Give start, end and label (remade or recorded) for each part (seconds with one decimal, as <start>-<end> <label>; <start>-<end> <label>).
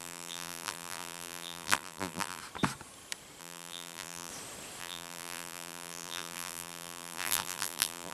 0.0-2.4 remade; 2.4-3.4 recorded; 3.4-4.3 remade; 4.3-4.8 recorded; 4.8-8.1 remade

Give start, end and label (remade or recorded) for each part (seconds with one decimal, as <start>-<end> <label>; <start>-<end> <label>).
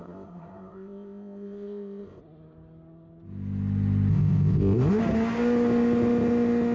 0.0-2.2 remade; 2.2-4.1 recorded; 4.1-5.0 remade; 5.0-6.7 recorded